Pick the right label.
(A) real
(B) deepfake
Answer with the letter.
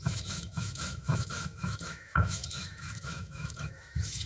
B